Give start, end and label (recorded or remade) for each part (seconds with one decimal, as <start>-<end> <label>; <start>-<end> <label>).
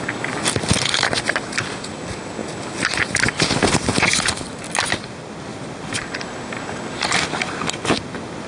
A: 0.0-8.5 recorded